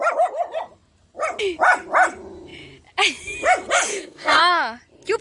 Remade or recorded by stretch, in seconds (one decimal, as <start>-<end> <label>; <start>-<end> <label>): 0.0-3.9 recorded; 3.9-4.4 remade; 4.4-5.2 recorded